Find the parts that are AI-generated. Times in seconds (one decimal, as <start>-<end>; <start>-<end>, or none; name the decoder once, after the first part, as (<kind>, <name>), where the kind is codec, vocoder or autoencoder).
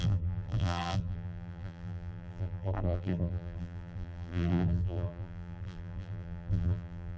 0.0-7.2 (vocoder, BigVGAN v2)